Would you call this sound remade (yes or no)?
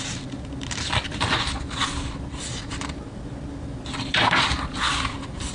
no